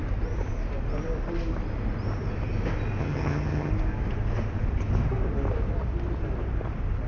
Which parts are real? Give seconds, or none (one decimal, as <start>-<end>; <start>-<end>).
0.0-3.0; 3.7-7.1